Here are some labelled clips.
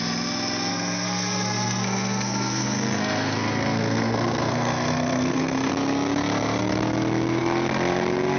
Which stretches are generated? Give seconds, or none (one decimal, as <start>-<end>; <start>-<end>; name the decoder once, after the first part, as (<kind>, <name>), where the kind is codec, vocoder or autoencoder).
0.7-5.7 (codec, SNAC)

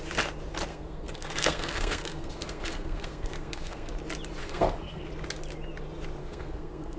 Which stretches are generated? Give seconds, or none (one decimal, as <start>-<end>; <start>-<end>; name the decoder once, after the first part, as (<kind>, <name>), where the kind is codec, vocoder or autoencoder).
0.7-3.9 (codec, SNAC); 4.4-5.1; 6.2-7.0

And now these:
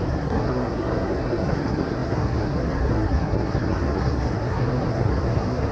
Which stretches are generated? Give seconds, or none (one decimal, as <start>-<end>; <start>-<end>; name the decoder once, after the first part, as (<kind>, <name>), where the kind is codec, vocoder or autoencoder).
0.0-5.7 (codec, SNAC)

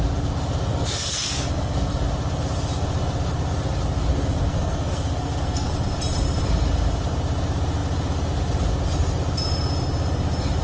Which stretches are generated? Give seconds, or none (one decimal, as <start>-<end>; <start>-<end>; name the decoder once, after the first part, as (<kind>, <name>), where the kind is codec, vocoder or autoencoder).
0.7-2.0 (codec, SNAC); 4.1-5.7